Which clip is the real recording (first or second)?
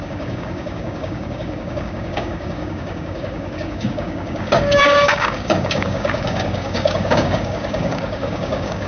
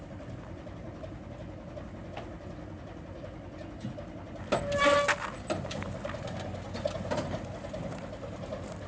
second